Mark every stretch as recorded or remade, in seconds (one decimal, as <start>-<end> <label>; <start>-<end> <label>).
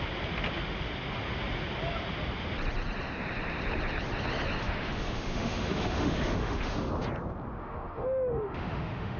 0.0-4.6 recorded; 4.6-6.9 remade; 6.9-7.6 recorded; 7.6-9.2 remade